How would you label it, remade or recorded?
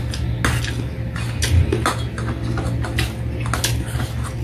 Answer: recorded